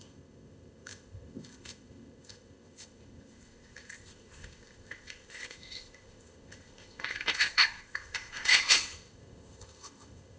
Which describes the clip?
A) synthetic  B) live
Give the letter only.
A